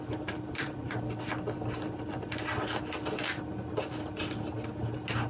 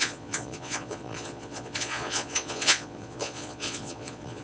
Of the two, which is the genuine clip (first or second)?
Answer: first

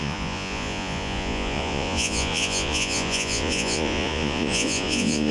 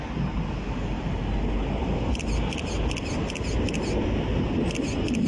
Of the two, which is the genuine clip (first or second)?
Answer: second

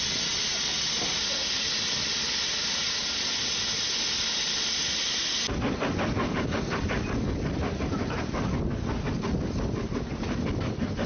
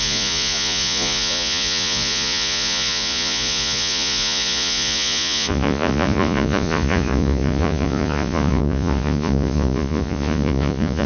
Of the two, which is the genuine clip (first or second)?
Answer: first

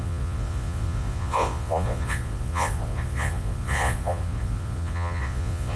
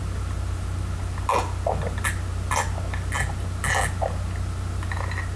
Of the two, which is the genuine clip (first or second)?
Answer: second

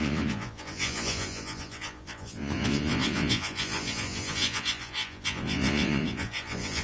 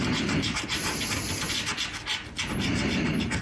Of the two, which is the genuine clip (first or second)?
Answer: second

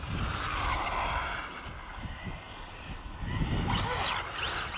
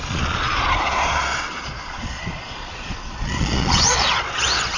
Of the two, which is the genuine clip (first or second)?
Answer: first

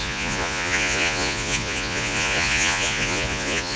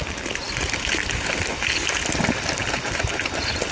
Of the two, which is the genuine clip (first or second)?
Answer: second